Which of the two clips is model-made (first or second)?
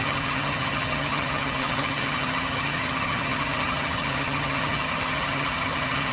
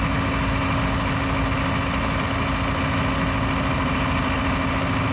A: first